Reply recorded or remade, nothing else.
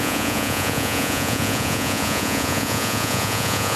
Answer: remade